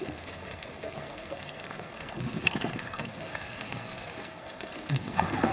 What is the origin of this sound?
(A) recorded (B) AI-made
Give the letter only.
B